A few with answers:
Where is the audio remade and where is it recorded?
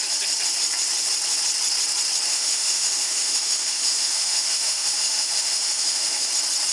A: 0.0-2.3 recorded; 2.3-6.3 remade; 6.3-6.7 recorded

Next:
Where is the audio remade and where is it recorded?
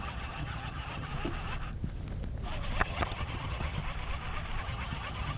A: 0.0-1.1 remade; 1.1-2.8 recorded; 2.8-3.8 remade; 3.8-4.6 recorded; 4.6-5.4 remade